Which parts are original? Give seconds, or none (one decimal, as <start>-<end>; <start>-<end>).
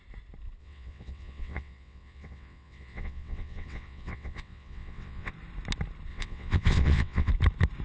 0.0-0.6; 5.3-6.1; 7.3-7.8